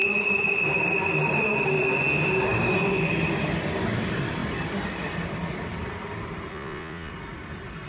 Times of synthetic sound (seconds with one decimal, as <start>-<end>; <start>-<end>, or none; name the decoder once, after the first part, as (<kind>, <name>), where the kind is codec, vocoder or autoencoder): 6.5-7.1 (vocoder, Vocos)